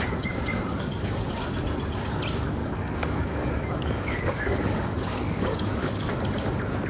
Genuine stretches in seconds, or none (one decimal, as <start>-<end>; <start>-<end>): 0.0-0.7; 1.4-2.6; 6.1-6.9